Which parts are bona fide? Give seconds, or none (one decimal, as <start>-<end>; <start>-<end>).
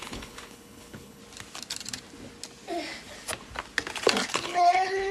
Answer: 1.2-4.3